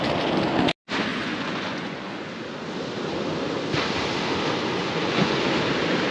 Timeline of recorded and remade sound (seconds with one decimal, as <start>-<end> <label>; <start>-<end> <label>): 0.0-1.1 recorded; 1.1-2.3 remade; 2.3-4.8 recorded; 4.8-5.4 remade; 5.4-6.1 recorded